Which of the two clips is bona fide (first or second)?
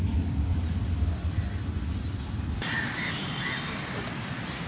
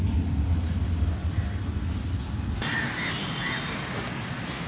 second